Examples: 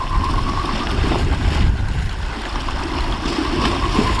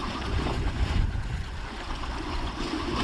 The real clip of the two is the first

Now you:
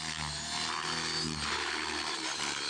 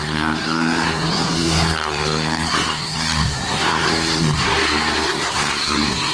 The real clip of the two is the first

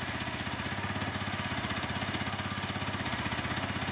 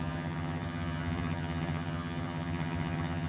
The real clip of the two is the first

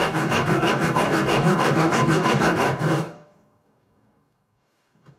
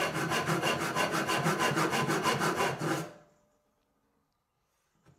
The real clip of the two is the second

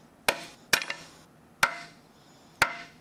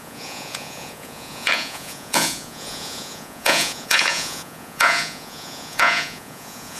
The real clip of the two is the first